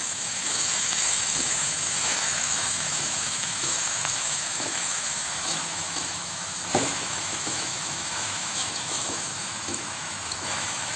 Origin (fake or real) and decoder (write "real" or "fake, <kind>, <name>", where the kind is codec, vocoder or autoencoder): fake, autoencoder, DAC-VAE